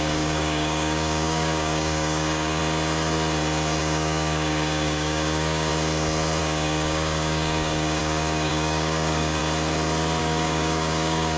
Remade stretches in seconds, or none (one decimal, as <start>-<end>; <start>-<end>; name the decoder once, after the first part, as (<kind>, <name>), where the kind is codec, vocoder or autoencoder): 0.0-2.6 (codec, DAC); 3.8-5.7; 6.4-9.4; 10.2-11.4